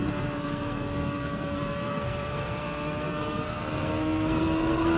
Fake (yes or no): yes